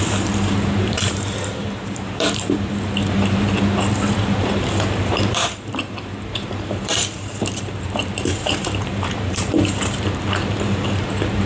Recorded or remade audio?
remade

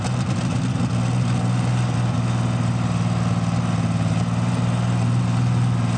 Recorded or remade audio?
recorded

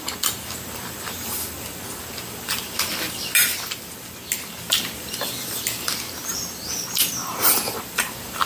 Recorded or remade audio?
recorded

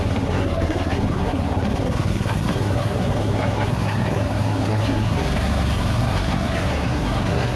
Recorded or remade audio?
remade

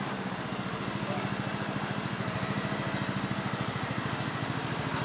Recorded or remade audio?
recorded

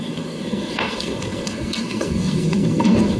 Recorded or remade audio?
remade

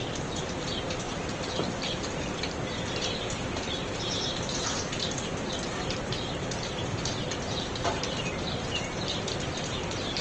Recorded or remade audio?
remade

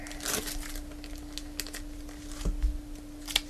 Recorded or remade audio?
recorded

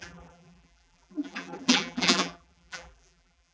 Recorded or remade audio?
remade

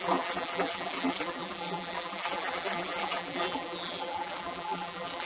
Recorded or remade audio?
remade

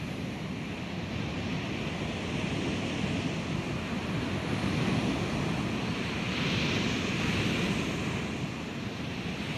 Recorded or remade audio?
recorded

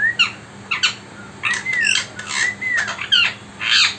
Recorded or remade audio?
recorded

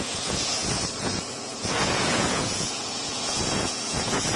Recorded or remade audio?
remade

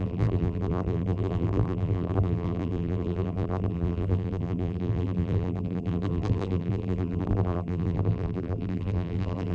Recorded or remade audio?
remade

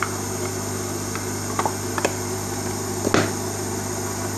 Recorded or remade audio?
recorded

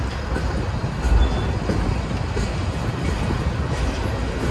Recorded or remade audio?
recorded